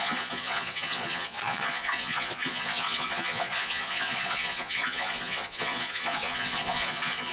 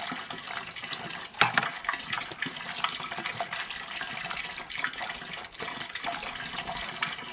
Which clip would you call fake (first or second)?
first